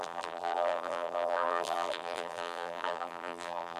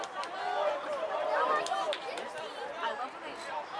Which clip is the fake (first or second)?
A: first